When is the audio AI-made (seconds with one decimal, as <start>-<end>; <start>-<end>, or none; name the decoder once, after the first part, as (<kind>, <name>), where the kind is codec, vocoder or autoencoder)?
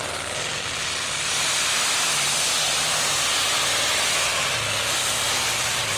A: 4.3-6.0 (vocoder, BigVGAN v2)